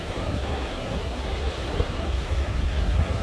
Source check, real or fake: fake